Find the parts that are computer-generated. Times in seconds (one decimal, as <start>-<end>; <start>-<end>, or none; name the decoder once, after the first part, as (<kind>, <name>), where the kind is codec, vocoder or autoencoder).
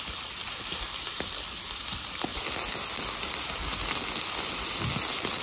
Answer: none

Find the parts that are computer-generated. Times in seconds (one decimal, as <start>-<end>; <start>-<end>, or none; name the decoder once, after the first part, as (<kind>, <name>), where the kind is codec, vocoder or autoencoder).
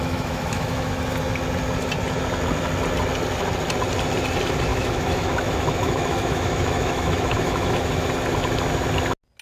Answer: 0.0-0.9 (autoencoder, DAC-VAE); 4.7-7.9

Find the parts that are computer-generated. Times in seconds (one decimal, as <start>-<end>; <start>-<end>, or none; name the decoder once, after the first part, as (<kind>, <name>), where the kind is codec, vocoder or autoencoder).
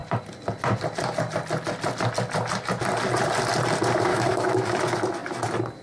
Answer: 4.1-4.8 (autoencoder, DAC-VAE)